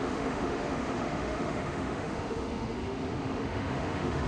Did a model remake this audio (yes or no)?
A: yes